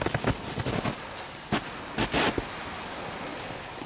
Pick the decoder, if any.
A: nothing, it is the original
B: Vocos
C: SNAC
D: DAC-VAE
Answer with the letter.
A